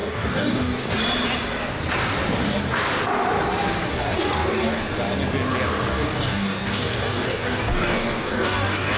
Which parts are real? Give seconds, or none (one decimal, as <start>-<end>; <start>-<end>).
0.9-3.9; 4.8-5.9